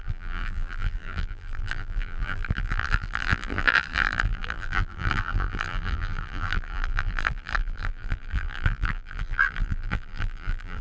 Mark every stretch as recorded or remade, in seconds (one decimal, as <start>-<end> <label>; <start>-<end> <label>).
0.0-10.8 remade